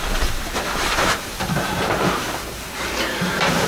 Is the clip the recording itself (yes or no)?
no